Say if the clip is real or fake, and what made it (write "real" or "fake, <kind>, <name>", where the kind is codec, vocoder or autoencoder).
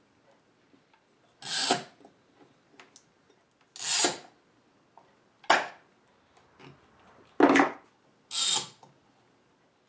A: real